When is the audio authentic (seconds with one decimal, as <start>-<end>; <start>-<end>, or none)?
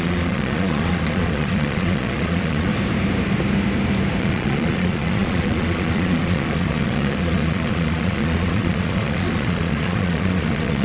2.7-4.2